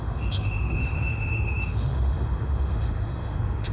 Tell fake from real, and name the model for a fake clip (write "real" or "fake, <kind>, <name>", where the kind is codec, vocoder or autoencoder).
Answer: fake, autoencoder, DAC-VAE